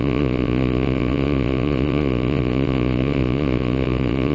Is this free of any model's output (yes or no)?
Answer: no